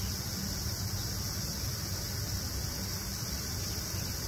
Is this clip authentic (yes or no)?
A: yes